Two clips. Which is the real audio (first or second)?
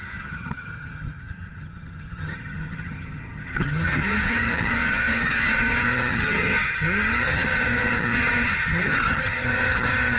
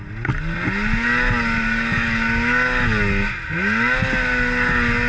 second